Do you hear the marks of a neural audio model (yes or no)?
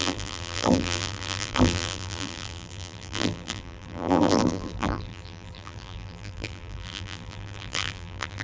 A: yes